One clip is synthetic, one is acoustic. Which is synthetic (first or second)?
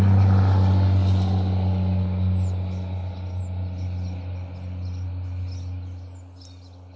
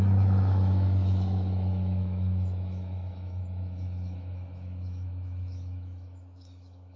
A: second